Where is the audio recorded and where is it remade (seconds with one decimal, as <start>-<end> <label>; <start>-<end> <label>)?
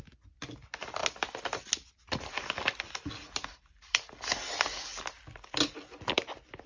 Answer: 0.0-6.7 recorded